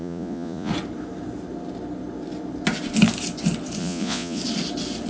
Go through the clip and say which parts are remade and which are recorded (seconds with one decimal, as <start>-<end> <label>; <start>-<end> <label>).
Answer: 0.0-0.7 remade; 0.7-3.8 recorded; 3.8-4.4 remade; 4.4-5.1 recorded